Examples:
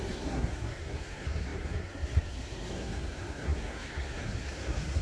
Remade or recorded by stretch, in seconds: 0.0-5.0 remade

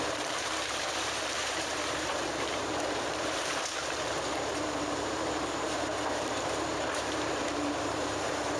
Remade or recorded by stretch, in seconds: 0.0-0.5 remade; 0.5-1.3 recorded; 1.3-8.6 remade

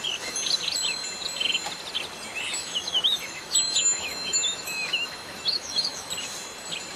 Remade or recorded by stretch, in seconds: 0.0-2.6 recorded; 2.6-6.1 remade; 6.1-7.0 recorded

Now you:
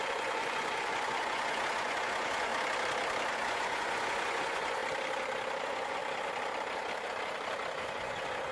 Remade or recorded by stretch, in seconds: 0.0-2.5 remade; 2.5-3.3 recorded; 3.3-4.8 remade; 4.8-5.6 recorded; 5.6-6.0 remade; 6.0-7.8 recorded; 7.8-8.5 remade

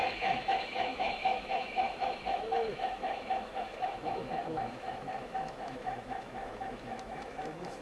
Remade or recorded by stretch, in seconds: 0.0-7.8 remade

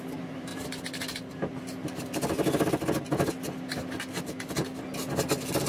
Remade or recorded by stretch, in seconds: 0.0-5.7 recorded